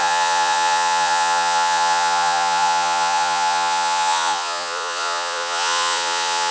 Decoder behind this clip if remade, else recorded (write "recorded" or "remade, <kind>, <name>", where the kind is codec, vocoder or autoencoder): remade, vocoder, Vocos